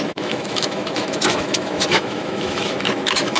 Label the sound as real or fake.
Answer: fake